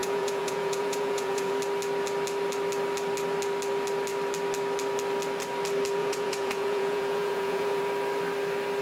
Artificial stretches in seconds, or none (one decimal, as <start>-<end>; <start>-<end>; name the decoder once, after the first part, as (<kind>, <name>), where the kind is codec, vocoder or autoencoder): 0.0-1.5 (vocoder, Vocos); 6.0-7.8